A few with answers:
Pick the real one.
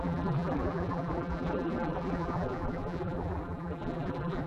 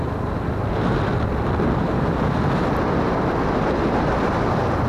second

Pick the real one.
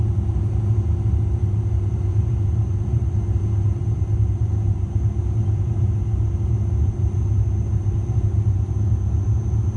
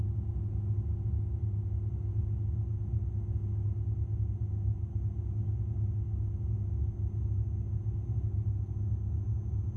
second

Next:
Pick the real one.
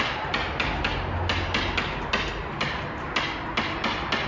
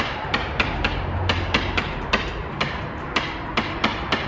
first